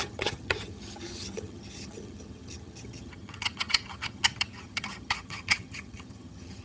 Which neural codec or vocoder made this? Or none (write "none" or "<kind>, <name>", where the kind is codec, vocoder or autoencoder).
vocoder, HiFi-GAN